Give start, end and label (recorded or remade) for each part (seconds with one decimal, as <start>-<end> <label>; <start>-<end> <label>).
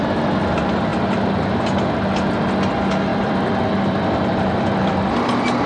0.0-3.1 recorded; 3.1-5.1 remade; 5.1-5.7 recorded